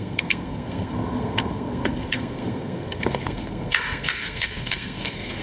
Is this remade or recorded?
remade